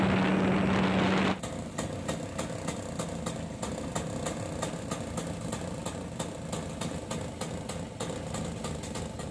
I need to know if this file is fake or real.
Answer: real